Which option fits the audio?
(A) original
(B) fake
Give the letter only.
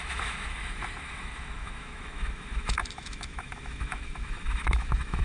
B